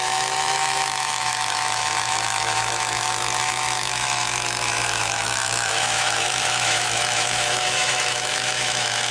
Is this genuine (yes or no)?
no